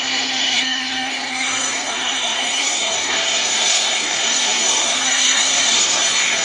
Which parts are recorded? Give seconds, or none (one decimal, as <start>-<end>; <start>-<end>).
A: none